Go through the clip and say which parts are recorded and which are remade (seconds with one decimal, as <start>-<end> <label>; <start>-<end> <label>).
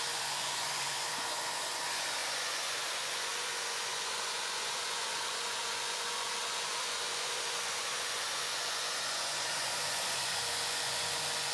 0.0-11.5 remade